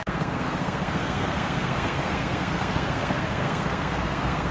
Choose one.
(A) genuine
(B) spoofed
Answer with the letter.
B